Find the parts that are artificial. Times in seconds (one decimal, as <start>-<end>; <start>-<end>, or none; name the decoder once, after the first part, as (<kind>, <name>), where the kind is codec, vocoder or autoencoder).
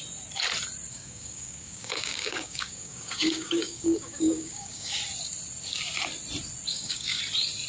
0.9-5.0 (codec, DAC); 6.7-7.2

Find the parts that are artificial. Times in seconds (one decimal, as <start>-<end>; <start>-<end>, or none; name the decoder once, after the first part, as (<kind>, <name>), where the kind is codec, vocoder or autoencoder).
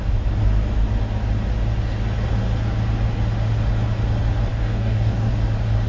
4.5-5.3 (codec, DAC)